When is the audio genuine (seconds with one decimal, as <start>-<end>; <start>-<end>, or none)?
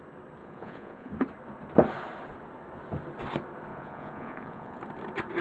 0.0-0.4; 1.1-3.7; 4.8-5.4